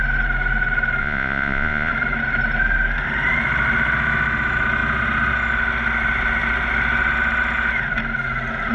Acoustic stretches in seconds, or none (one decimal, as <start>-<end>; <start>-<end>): 0.0-1.0; 1.9-8.7